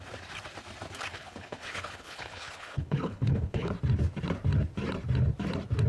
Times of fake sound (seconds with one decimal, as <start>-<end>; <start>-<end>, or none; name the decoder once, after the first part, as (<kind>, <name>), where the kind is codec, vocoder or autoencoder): 1.1-3.7 (codec, HILCodec)